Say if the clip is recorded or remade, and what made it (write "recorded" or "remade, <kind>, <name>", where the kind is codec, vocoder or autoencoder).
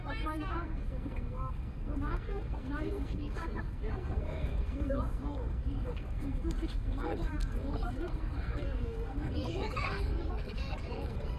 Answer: remade, codec, SNAC